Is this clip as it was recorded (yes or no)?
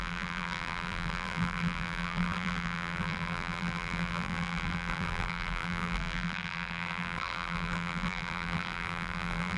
no